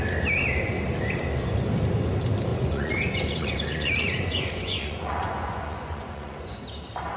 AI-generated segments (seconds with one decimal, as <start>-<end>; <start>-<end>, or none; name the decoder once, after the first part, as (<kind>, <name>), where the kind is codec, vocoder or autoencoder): 2.5-6.6 (vocoder, Vocos)